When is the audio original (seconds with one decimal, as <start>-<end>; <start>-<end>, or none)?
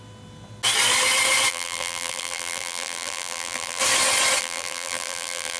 0.0-1.5; 3.8-4.4